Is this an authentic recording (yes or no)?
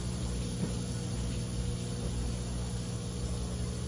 yes